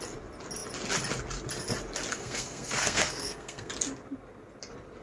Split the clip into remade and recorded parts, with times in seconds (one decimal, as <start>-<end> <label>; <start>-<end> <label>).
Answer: 0.0-2.1 recorded; 2.1-3.7 remade; 3.7-5.0 recorded